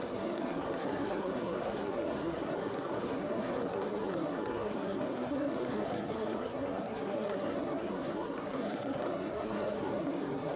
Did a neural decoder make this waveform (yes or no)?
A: yes